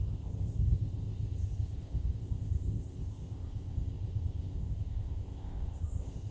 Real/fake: fake